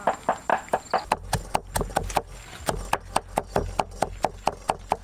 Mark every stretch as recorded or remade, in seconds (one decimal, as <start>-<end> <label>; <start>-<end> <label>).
0.0-5.0 recorded